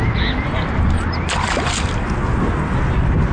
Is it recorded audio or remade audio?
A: recorded